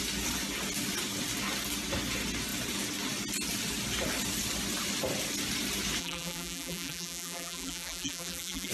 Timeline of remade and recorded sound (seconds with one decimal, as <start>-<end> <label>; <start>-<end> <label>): 0.0-6.0 recorded; 6.0-8.7 remade